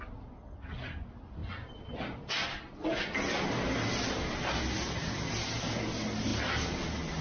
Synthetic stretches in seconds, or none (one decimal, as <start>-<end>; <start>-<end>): none